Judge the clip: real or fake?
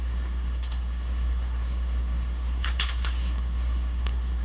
fake